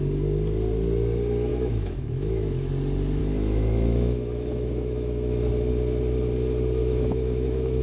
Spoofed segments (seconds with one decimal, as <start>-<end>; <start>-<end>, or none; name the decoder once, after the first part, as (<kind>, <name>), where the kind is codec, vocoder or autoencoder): 1.5-2.7 (autoencoder, DAC-VAE); 3.2-5.5; 6.8-7.8